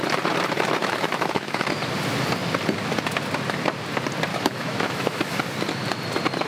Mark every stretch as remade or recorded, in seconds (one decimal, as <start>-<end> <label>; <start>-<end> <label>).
0.0-0.8 recorded; 0.8-1.6 remade; 1.6-4.3 recorded; 4.3-5.3 remade; 5.3-6.5 recorded